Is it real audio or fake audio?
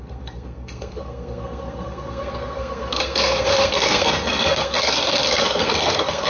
fake